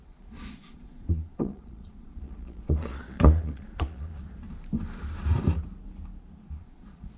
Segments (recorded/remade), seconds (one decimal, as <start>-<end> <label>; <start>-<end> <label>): 0.0-4.2 remade; 4.2-6.5 recorded; 6.5-7.2 remade